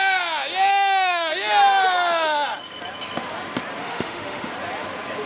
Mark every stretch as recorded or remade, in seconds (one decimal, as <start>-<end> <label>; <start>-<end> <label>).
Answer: 0.0-0.7 recorded; 0.7-1.3 remade; 1.3-3.8 recorded; 3.8-4.5 remade; 4.5-5.3 recorded